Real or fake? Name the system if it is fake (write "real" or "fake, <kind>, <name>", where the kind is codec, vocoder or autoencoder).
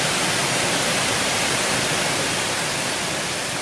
fake, vocoder, BigVGAN v2